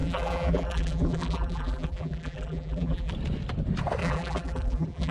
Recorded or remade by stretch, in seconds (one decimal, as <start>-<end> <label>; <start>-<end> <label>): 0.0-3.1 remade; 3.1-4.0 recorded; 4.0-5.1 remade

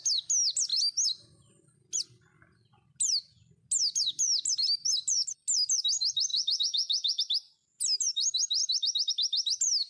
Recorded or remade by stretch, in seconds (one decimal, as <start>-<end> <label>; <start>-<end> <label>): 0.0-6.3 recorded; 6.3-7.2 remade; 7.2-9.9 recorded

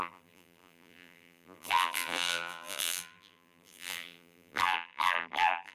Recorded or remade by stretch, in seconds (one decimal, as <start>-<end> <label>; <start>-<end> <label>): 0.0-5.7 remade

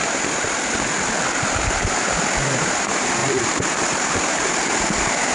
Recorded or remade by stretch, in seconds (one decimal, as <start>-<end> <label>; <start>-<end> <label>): 0.0-5.3 remade

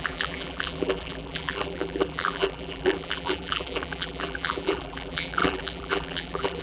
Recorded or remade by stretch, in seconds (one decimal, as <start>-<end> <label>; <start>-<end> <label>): 0.0-6.6 remade